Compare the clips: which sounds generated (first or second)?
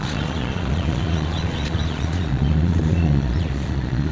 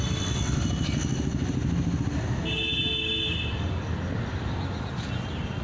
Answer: first